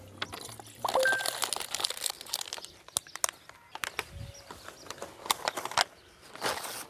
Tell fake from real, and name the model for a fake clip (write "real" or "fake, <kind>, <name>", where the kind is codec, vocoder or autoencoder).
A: real